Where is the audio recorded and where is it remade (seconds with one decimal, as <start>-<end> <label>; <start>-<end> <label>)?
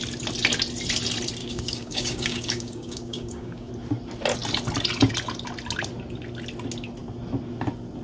0.0-1.4 recorded; 1.4-3.7 remade; 3.7-8.0 recorded